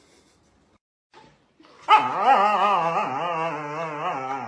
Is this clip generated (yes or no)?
no